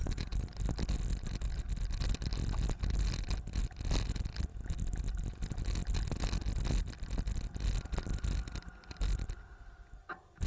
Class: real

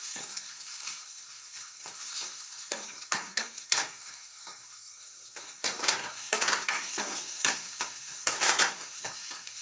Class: fake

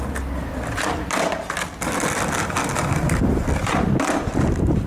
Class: real